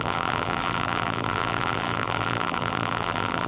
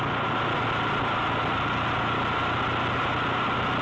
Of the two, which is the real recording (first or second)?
second